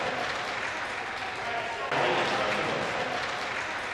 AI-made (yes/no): no